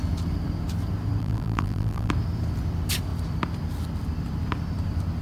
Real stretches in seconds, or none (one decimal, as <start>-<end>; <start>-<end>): 0.0-1.2; 2.1-5.2